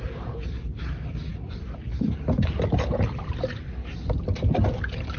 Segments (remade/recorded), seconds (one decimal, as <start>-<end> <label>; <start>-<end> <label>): 0.0-5.2 recorded